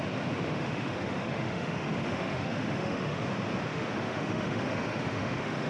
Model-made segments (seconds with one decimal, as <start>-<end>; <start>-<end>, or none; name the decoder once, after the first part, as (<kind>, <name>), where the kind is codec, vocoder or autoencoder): 0.5-3.2 (autoencoder, DAC-VAE); 3.7-5.7